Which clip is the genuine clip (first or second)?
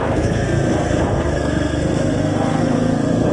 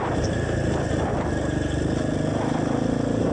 second